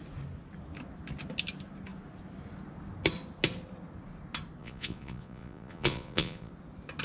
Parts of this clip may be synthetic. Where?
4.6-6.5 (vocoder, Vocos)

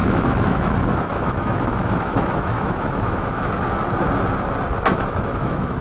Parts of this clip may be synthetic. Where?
0.0-3.5 (autoencoder, DAC-VAE); 4.9-5.8

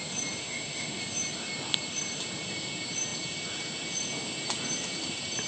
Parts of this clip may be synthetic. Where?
0.4-1.0 (autoencoder, DAC-VAE)

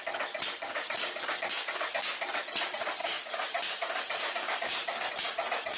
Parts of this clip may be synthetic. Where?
0.6-2.4 (codec, DAC); 3.0-5.1

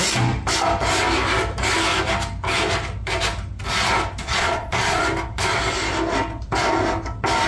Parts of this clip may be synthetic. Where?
4.2-5.0 (vocoder, Vocos)

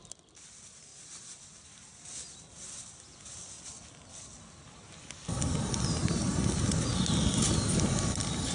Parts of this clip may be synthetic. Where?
0.9-3.6 (vocoder, BigVGAN v2); 6.0-6.7

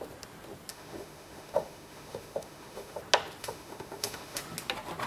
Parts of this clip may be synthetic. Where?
0.7-3.0 (autoencoder, DAC-VAE); 3.4-4.4

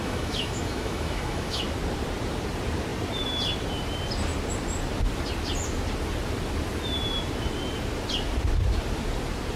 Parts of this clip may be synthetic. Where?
0.0-1.6 (autoencoder, DAC-VAE)